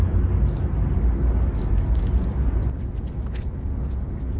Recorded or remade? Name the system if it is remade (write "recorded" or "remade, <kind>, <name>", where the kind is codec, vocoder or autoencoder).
recorded